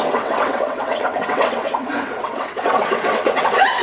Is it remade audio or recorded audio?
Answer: remade